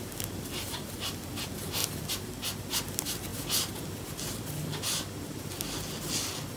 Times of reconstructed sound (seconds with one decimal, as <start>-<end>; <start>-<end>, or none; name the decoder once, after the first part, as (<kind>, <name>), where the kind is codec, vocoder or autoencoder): none